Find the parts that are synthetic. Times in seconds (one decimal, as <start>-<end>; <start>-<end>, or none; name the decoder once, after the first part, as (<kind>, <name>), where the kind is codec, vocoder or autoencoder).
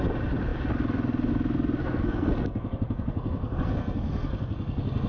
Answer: 1.8-5.1 (codec, SNAC)